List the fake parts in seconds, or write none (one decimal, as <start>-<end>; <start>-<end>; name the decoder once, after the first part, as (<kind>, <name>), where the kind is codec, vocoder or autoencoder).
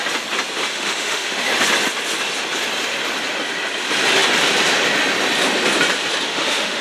0.7-1.5 (autoencoder, DAC-VAE); 6.3-6.8